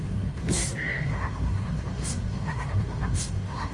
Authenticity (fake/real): fake